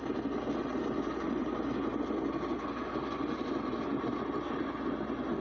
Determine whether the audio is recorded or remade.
recorded